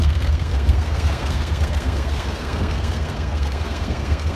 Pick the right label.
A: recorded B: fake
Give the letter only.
B